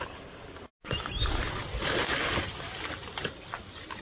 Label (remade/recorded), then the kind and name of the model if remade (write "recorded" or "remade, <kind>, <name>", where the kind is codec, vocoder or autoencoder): recorded